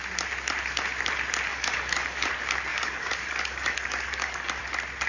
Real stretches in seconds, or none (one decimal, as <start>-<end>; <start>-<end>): 0.0-1.5; 2.3-2.7; 4.6-5.1